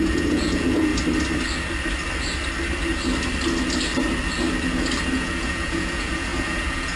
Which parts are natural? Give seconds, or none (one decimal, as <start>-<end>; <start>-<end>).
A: 0.9-5.1

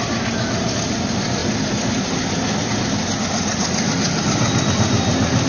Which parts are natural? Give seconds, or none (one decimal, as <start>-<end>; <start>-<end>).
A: 0.0-5.5

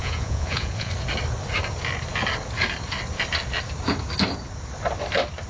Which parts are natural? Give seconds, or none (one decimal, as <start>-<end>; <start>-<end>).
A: 0.9-5.5

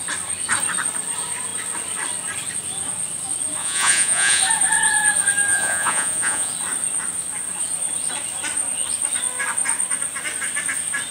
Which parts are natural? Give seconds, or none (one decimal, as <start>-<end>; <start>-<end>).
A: 0.0-3.6; 4.4-5.5; 6.5-11.1